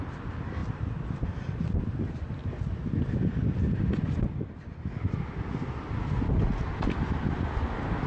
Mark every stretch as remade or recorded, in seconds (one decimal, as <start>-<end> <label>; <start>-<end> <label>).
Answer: 0.0-8.1 recorded